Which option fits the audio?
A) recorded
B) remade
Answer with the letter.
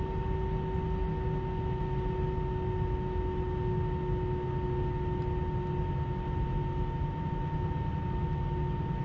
A